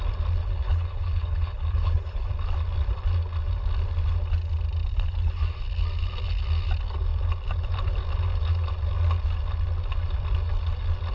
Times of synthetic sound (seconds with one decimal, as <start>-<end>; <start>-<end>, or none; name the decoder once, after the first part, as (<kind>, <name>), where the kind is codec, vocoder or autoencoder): 0.4-2.3 (codec, HILCodec); 4.9-5.6